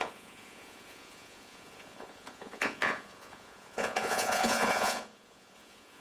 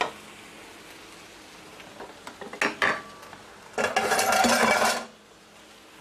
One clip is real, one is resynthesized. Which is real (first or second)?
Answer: second